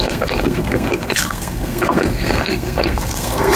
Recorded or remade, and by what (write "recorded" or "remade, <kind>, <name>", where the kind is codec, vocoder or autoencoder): remade, codec, SNAC